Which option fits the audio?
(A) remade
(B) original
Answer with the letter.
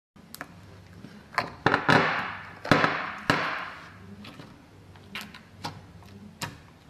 B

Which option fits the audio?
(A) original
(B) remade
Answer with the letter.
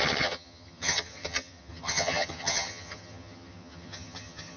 B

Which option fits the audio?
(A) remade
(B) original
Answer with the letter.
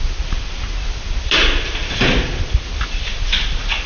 B